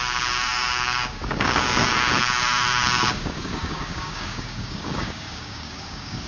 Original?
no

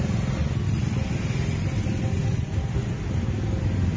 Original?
yes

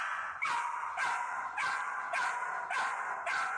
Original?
no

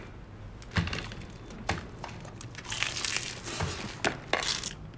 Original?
yes